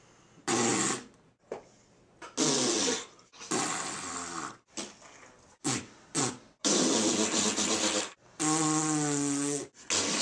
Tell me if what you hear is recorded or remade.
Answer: recorded